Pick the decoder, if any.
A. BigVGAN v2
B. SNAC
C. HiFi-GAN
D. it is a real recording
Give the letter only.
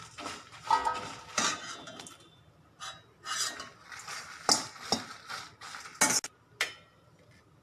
D